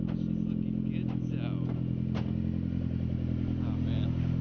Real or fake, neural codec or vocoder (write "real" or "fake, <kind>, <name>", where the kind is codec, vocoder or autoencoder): real